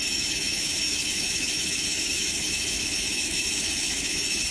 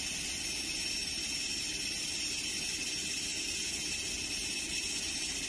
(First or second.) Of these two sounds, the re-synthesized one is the first